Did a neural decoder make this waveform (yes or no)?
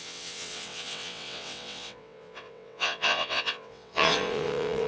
yes